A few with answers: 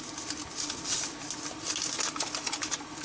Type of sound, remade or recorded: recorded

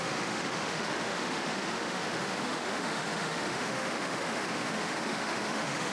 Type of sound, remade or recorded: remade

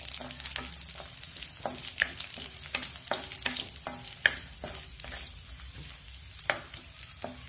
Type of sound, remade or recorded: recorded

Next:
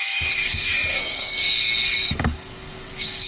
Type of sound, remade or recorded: remade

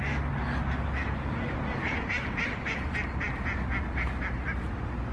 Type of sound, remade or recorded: recorded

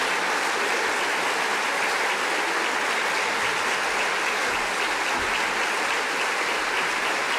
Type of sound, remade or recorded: recorded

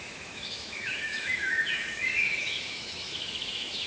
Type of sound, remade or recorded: remade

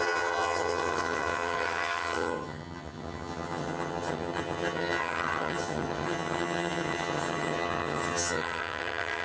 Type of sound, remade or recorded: remade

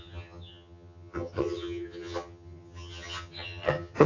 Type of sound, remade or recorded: remade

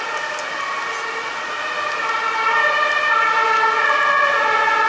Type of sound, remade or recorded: recorded